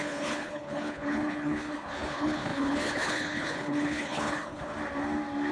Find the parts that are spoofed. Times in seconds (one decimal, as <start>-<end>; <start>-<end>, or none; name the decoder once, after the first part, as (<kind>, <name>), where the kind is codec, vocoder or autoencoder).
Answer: 0.0-4.7 (codec, HILCodec)